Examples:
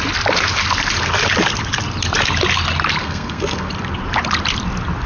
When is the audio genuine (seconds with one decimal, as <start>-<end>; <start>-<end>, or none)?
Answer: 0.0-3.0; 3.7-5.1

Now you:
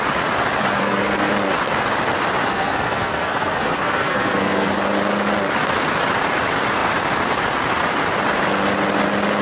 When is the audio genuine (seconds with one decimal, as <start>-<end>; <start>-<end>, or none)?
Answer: 0.0-0.8; 1.3-2.5; 4.7-9.4

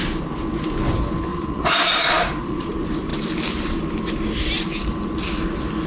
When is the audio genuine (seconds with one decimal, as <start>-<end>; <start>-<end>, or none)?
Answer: 0.0-1.3; 2.7-5.9

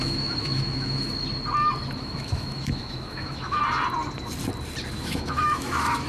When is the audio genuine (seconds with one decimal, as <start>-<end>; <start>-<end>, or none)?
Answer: 1.1-2.0; 3.6-4.9

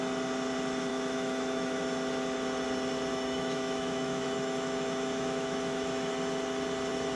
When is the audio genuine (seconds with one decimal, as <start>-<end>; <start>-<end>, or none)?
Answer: 0.0-0.9; 1.8-3.1; 6.1-7.2

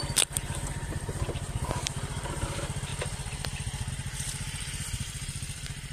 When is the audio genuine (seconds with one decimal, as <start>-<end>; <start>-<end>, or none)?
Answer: 2.9-3.9